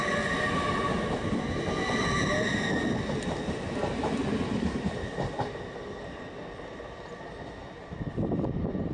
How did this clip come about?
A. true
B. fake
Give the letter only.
A